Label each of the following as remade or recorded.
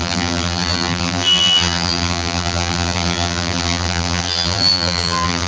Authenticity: remade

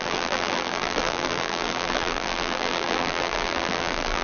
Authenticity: remade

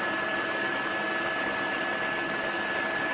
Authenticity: recorded